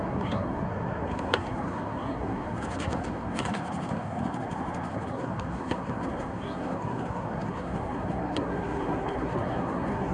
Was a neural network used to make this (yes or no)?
yes